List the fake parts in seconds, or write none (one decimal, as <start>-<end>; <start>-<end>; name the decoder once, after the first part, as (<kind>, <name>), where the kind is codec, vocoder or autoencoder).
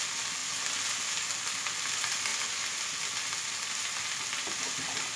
none